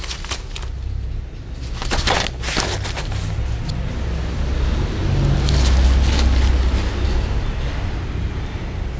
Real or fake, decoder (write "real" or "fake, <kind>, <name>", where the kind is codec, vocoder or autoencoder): real